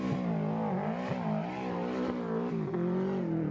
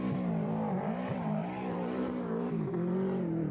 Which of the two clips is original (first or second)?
first